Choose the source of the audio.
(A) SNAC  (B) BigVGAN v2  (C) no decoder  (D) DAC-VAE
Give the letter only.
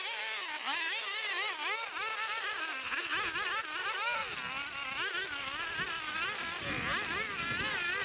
C